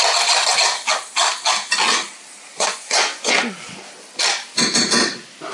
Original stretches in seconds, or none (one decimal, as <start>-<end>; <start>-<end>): 0.0-2.5; 3.8-5.5